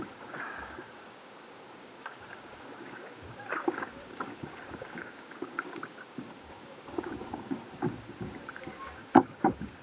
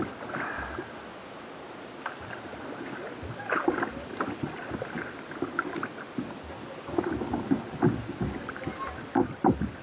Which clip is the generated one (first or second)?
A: first